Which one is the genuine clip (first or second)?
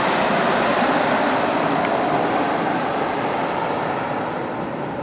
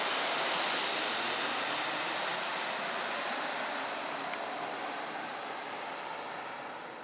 second